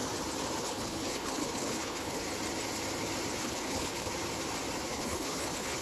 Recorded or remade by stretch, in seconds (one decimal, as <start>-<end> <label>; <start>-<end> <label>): 0.0-0.6 recorded; 0.6-2.2 remade; 2.2-3.4 recorded; 3.4-4.1 remade; 4.1-4.9 recorded; 4.9-5.8 remade